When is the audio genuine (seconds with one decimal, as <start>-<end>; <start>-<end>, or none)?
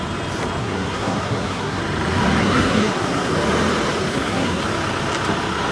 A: 0.0-0.6; 1.8-2.4; 3.3-4.1; 4.6-5.7